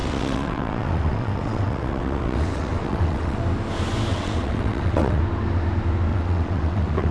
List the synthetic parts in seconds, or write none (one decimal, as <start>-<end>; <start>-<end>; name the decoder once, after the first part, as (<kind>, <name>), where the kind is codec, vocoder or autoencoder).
0.0-3.4 (vocoder, WaveNeXt); 4.1-5.2; 6.1-7.1